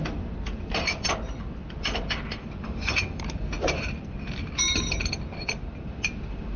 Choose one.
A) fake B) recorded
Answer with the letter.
B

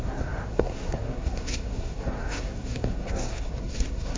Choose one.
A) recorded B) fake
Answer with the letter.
B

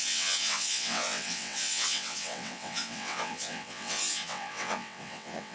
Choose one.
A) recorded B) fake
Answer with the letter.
B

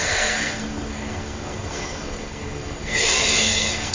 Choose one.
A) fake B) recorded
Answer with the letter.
A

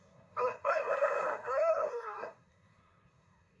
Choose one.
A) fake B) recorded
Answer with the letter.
A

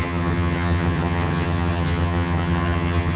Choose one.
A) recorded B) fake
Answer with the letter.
B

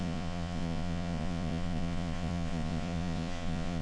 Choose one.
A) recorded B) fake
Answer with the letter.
B